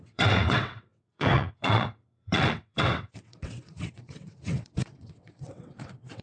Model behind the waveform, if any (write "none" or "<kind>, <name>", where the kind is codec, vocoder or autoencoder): vocoder, WaveNeXt